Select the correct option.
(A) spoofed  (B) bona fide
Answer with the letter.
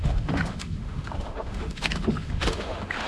A